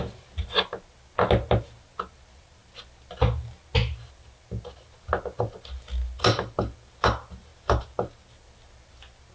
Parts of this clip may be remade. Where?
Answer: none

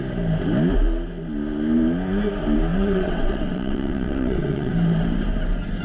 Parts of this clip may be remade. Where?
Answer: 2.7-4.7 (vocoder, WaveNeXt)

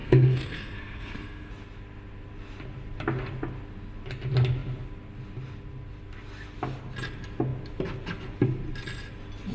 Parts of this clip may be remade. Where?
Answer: 0.0-1.5 (codec, SNAC)

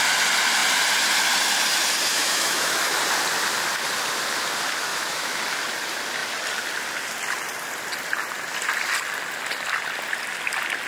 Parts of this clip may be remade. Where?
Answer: 2.1-3.0 (autoencoder, DAC-VAE); 4.9-5.4

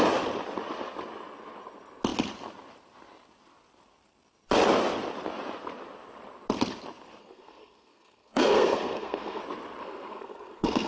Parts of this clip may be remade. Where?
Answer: 7.2-9.4 (codec, SNAC); 9.8-10.9